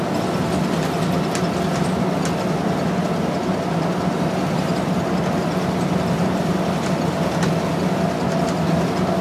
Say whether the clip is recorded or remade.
recorded